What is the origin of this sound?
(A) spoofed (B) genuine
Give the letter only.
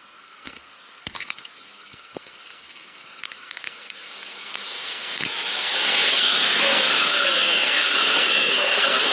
A